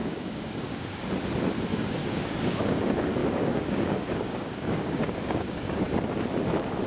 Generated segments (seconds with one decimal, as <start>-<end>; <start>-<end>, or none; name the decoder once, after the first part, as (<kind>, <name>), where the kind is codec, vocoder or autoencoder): 0.0-1.0 (codec, DAC); 1.7-2.8; 3.2-5.8